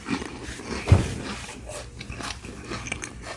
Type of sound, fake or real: real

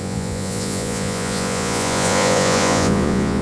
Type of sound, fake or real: fake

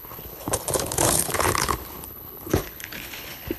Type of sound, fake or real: fake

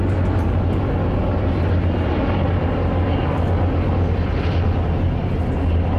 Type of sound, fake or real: real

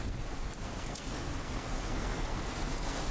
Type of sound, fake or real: fake